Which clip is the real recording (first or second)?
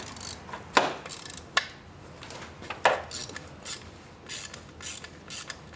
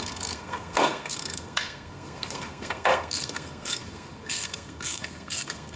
first